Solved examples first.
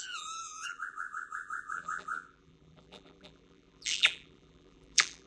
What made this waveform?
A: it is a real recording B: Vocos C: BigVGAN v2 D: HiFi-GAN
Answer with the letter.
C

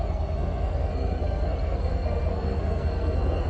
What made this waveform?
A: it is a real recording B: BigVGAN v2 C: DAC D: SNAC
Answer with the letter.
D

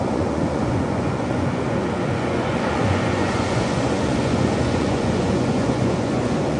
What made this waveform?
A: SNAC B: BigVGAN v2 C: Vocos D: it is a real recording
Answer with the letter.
C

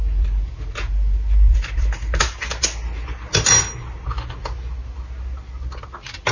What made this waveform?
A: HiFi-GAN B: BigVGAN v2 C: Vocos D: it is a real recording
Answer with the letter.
D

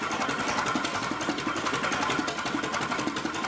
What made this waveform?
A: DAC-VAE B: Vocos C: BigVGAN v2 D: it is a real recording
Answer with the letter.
D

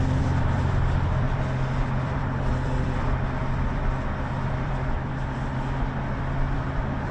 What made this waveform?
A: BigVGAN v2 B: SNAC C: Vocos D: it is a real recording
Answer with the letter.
A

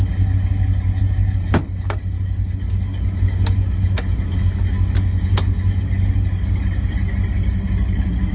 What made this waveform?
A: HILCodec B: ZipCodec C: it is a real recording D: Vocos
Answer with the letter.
C